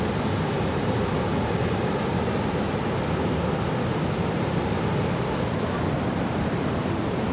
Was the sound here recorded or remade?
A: recorded